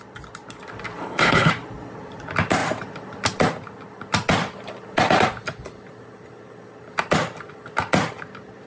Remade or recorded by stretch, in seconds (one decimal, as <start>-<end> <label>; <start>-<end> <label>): 0.0-1.0 recorded; 1.0-1.5 remade; 1.5-8.7 recorded